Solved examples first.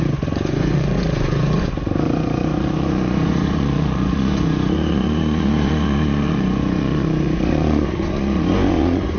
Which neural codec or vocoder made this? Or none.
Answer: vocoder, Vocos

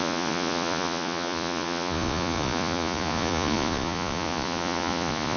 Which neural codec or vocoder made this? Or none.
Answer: vocoder, Vocos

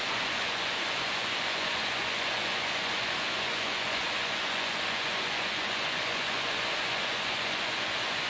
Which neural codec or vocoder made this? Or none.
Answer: vocoder, Vocos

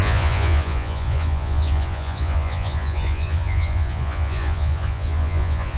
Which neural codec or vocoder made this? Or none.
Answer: vocoder, Vocos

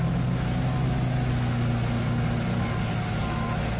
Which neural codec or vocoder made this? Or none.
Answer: none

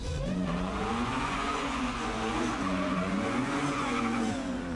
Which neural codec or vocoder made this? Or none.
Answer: vocoder, Vocos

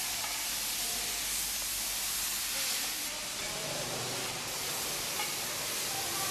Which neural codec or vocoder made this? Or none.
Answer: none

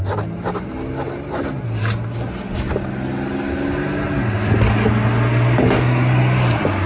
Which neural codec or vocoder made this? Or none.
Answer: none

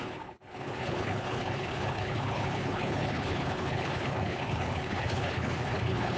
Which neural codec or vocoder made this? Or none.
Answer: codec, HILCodec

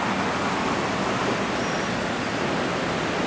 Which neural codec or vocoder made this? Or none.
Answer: none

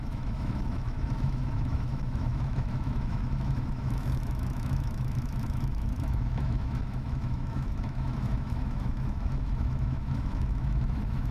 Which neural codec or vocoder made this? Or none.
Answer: autoencoder, DAC-VAE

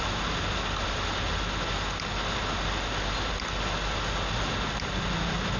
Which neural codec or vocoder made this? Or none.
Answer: none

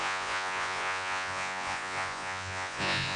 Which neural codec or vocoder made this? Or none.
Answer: vocoder, Vocos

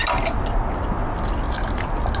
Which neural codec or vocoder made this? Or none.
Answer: none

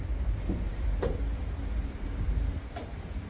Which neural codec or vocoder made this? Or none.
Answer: vocoder, BigVGAN v2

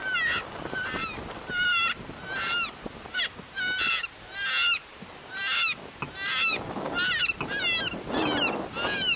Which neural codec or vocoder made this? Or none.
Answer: none